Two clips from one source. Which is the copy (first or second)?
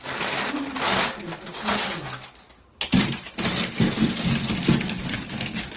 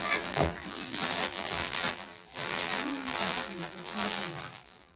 second